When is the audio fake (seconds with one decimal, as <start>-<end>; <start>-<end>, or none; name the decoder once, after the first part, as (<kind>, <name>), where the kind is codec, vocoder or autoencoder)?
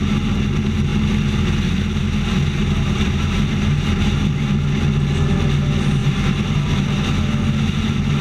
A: 2.6-4.3 (vocoder, BigVGAN v2); 6.0-6.7